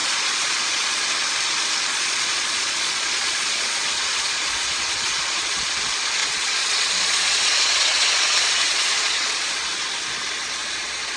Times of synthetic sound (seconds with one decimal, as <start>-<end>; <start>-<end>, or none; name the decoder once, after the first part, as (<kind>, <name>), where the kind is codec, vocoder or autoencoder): 0.0-1.0 (vocoder, Vocos); 1.9-5.6; 6.2-10.0; 10.6-11.2